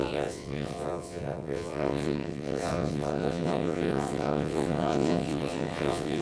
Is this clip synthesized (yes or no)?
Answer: yes